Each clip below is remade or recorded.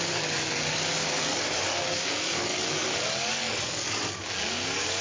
remade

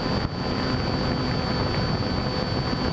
recorded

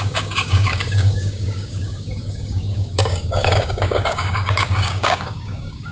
remade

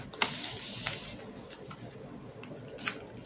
recorded